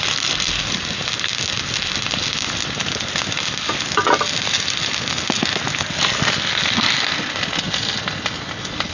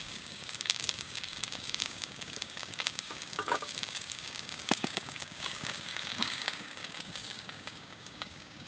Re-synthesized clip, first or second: second